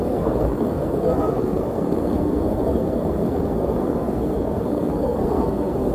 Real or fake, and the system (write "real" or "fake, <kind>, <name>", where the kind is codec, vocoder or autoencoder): fake, codec, SNAC